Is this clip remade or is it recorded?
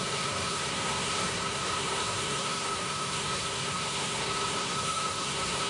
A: remade